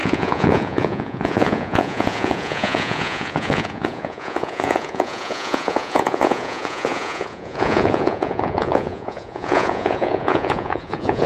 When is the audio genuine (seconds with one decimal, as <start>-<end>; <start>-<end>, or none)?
none